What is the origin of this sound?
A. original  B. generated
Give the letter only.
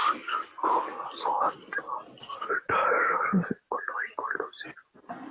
A